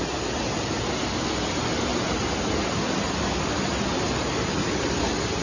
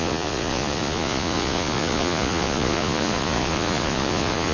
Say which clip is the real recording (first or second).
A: first